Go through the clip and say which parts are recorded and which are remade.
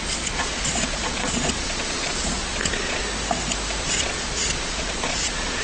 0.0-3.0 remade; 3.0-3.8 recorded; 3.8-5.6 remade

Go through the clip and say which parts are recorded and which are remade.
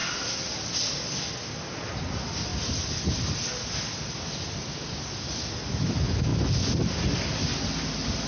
0.0-8.3 recorded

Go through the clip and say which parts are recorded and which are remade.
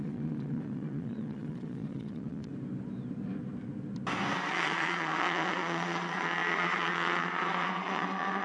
0.0-2.5 remade; 2.5-4.5 recorded; 4.5-8.4 remade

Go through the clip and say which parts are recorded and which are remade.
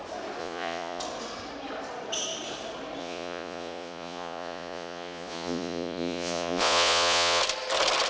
0.0-0.4 recorded; 0.4-1.0 remade; 1.0-3.0 recorded; 3.0-7.4 remade; 7.4-8.1 recorded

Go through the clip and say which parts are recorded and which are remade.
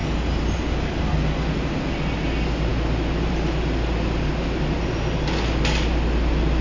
0.0-6.6 recorded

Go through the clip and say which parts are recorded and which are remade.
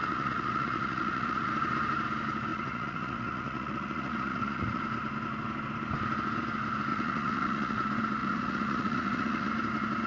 0.0-1.5 remade; 1.5-2.5 recorded; 2.5-4.8 remade; 4.8-6.9 recorded; 6.9-7.8 remade; 7.8-8.2 recorded; 8.2-9.5 remade; 9.5-10.1 recorded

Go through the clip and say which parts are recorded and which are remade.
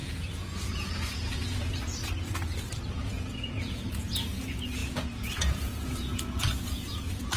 0.0-1.7 remade; 1.7-2.9 recorded; 2.9-7.4 remade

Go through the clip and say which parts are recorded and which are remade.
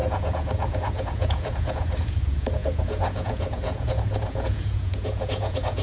0.0-5.8 remade